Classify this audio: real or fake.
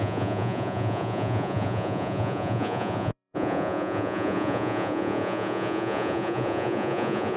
fake